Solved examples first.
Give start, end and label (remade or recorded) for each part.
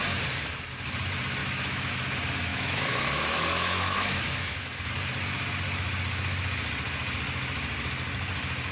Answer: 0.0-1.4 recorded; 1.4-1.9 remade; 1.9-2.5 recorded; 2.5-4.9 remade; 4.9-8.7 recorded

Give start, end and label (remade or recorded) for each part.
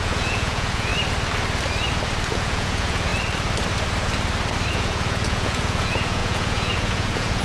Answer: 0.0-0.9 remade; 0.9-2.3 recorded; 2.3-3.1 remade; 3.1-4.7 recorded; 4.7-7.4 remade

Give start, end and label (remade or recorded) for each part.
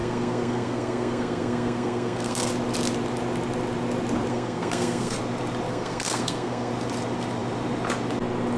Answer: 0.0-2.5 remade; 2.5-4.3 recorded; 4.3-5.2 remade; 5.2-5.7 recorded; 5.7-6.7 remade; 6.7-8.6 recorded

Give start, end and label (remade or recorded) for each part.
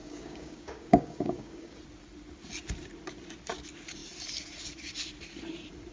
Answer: 0.0-1.8 remade; 1.8-5.9 recorded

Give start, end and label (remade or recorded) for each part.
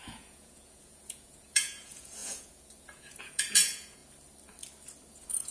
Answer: 0.0-4.0 remade; 4.0-5.1 recorded; 5.1-5.5 remade